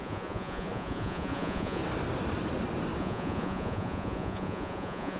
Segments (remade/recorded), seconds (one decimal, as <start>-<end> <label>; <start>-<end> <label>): 0.0-1.8 remade; 1.8-3.0 recorded; 3.0-5.2 remade